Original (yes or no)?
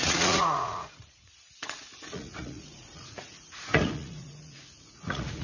no